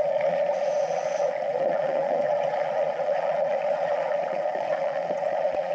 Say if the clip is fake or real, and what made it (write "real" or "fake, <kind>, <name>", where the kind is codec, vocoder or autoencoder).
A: fake, vocoder, Vocos